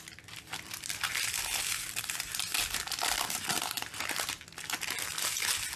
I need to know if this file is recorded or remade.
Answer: recorded